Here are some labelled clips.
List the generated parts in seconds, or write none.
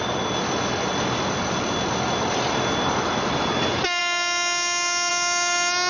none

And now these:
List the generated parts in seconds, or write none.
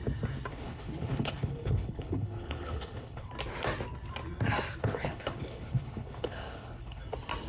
0.5-3.3 (codec, HILCodec); 4.8-7.0